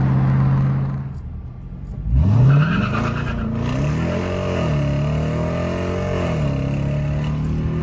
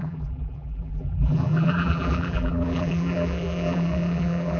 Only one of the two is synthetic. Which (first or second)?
second